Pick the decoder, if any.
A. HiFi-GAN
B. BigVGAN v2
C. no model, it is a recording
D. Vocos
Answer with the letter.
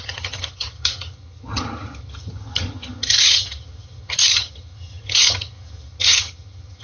A